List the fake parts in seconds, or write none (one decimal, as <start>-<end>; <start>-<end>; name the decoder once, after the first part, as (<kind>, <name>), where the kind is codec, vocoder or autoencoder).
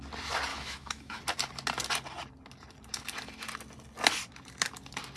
0.5-1.2 (autoencoder, DAC-VAE)